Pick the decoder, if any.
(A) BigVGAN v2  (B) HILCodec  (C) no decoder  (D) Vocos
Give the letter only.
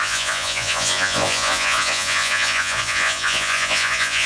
D